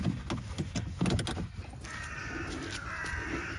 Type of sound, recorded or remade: recorded